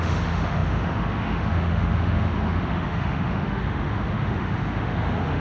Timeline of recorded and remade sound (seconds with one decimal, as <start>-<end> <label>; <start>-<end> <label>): 0.0-5.4 remade